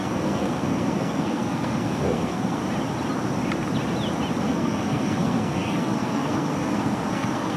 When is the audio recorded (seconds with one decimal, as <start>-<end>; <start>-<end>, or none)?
2.6-4.4